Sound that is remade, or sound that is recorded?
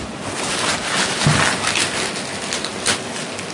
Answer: recorded